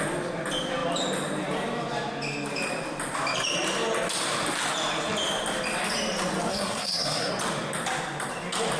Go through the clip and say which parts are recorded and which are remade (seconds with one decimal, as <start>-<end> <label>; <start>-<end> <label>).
0.0-6.5 recorded; 6.5-7.3 remade; 7.3-8.8 recorded